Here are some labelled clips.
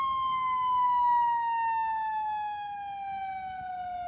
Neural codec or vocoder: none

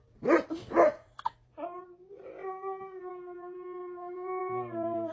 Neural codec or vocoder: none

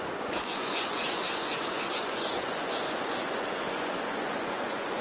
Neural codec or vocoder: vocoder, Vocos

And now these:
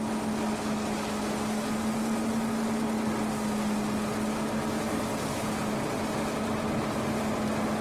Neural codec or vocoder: none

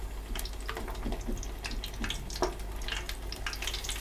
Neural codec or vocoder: none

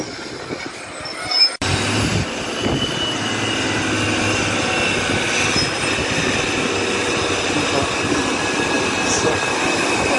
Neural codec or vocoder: none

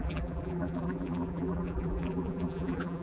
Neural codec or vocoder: vocoder, BigVGAN v2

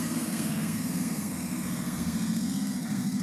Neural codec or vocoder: codec, SNAC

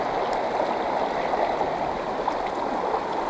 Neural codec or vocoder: none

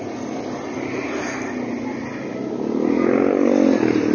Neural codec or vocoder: none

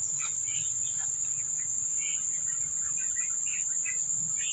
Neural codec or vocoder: none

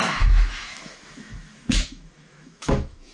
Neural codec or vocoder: autoencoder, DAC-VAE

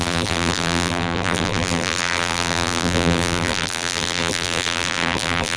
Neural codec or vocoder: vocoder, BigVGAN v2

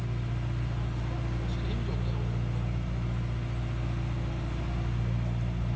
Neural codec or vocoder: none